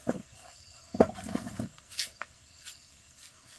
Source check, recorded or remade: remade